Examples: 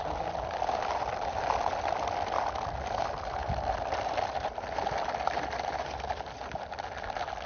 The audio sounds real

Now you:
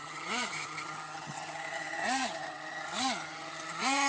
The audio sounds fake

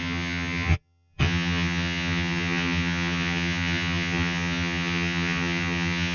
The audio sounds fake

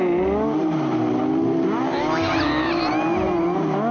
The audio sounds real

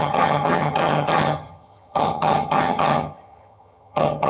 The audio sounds fake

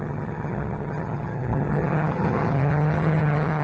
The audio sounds fake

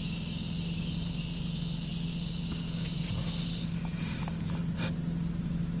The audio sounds real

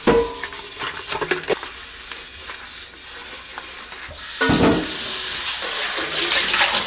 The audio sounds real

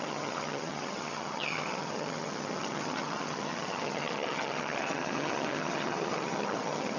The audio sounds fake